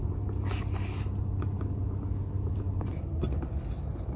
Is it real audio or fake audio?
real